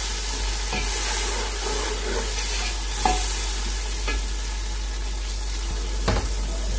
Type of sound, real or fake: real